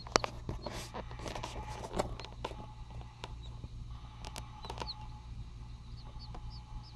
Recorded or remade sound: recorded